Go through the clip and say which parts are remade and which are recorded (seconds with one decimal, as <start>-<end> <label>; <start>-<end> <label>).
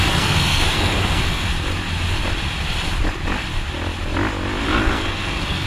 0.0-1.5 remade; 1.5-4.7 recorded; 4.7-5.7 remade